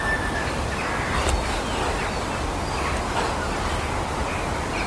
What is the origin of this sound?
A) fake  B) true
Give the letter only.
B